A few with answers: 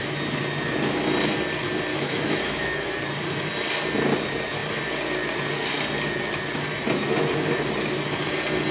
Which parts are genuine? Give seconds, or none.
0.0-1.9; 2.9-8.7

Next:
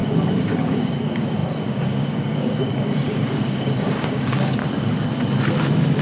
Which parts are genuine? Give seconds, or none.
4.6-6.0

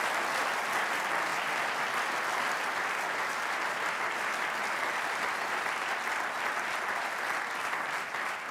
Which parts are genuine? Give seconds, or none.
0.0-8.5

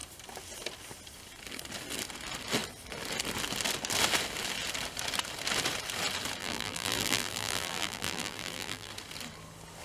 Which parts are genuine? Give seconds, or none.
0.0-6.4; 8.9-9.8

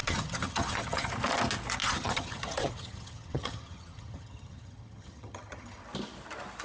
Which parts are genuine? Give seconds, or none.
1.1-1.8; 5.8-6.6

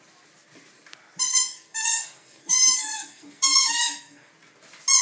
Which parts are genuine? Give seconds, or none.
0.0-1.3; 4.3-5.0

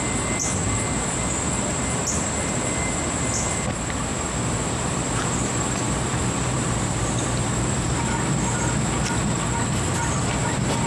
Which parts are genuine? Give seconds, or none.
0.0-4.1; 8.1-10.9